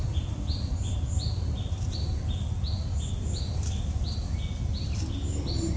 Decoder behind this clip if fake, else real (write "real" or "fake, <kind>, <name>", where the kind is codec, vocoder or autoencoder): real